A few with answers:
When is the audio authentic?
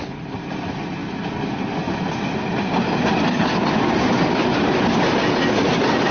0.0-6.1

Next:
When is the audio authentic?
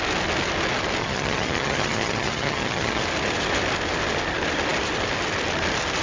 0.0-1.0; 3.0-6.0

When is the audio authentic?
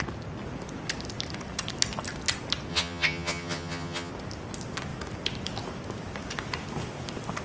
0.0-2.7; 4.1-7.4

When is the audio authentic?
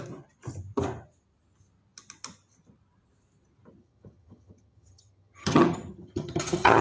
0.0-3.8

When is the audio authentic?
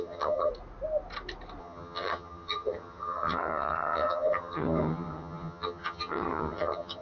0.5-1.6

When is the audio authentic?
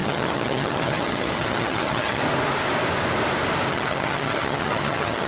2.2-3.7